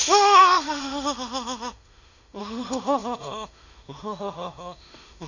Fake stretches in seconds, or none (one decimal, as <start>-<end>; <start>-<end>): 0.0-5.3